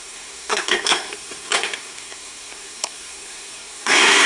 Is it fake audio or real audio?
fake